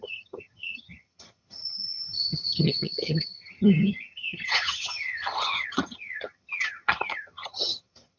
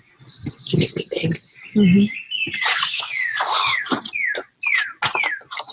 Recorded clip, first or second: second